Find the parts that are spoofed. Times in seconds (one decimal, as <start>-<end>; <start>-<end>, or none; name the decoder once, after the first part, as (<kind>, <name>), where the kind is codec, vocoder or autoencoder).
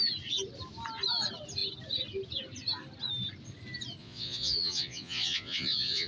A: 4.0-6.1 (vocoder, Vocos)